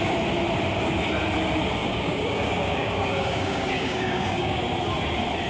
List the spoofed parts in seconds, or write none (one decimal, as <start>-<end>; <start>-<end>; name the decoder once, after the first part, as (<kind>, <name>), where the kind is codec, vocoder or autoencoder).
1.8-4.6 (codec, DAC)